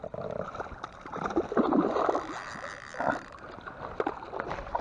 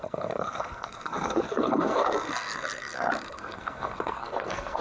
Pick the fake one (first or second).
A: second